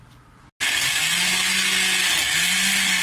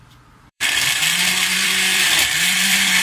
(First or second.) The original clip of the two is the first